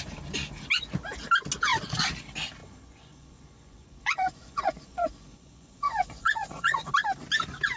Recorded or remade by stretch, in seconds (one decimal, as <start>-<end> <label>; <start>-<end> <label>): 0.0-2.6 recorded; 2.6-6.9 remade; 6.9-7.8 recorded

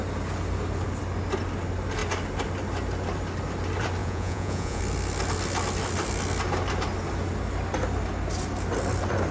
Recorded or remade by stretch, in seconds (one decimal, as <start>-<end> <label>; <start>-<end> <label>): 0.0-4.0 recorded; 4.0-4.8 remade; 4.8-9.3 recorded

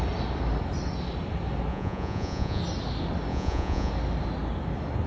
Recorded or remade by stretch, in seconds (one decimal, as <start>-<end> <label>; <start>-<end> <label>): 0.0-1.7 recorded; 1.7-2.6 remade; 2.6-3.3 recorded; 3.3-3.9 remade; 3.9-5.1 recorded

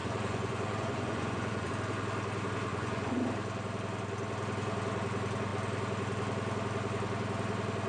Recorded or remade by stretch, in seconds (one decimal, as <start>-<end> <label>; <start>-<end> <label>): 0.0-1.7 remade; 1.7-2.7 recorded; 2.7-3.2 remade; 3.2-7.9 recorded

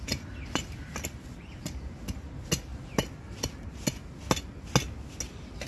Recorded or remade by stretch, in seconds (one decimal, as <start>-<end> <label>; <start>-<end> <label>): 0.0-5.7 recorded